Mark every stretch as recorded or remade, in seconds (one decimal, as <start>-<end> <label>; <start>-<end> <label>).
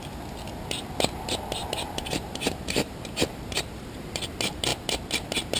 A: 0.0-1.6 recorded; 1.6-4.3 remade; 4.3-5.6 recorded